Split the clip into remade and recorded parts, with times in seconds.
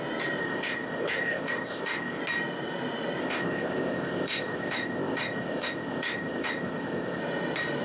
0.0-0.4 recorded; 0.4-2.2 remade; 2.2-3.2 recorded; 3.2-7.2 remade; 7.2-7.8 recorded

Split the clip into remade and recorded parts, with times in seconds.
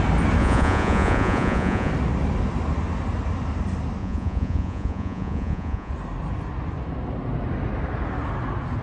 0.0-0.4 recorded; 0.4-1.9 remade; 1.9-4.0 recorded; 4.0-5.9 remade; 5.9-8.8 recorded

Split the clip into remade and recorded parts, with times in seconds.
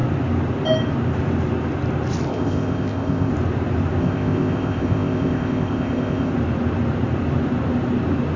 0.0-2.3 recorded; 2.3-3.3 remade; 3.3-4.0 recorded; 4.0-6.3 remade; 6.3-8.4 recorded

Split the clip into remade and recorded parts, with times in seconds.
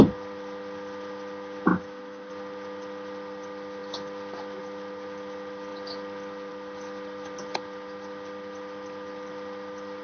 0.0-1.7 recorded; 1.7-2.3 remade; 2.3-10.0 recorded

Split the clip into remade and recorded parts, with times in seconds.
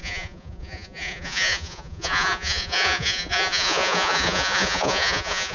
0.0-5.5 remade